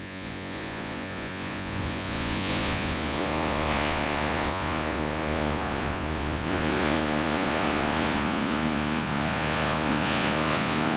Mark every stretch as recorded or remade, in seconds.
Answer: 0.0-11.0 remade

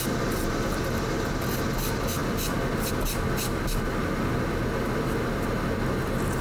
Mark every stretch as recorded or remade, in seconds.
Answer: 0.0-6.4 recorded

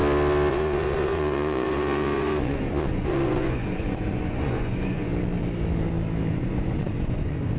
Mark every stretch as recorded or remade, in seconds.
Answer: 0.0-0.5 recorded; 0.5-5.1 remade; 5.1-6.3 recorded; 6.3-7.6 remade

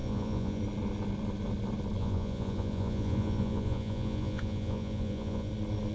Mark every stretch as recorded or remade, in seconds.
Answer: 0.0-0.6 remade; 0.6-2.0 recorded; 2.0-5.5 remade; 5.5-5.9 recorded

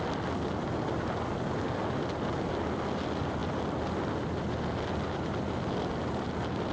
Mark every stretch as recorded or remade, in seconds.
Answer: 0.0-6.7 recorded

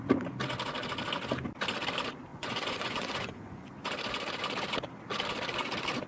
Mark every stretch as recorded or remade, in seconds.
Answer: 0.0-2.3 recorded; 2.3-3.7 remade; 3.7-6.1 recorded

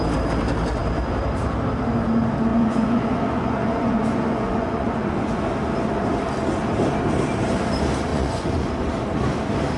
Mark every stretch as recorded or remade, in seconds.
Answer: 0.0-2.5 recorded; 2.5-5.4 remade; 5.4-8.1 recorded; 8.1-8.7 remade; 8.7-9.8 recorded

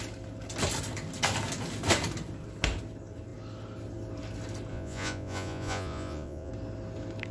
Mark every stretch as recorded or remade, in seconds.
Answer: 0.0-4.7 recorded; 4.7-6.5 remade; 6.5-7.3 recorded